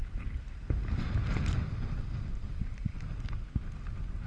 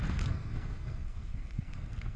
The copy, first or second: second